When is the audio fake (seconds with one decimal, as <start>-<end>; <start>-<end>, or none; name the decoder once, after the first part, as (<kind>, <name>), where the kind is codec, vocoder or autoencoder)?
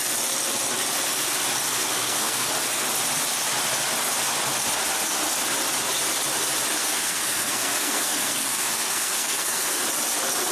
1.7-2.5 (codec, SNAC); 6.8-9.8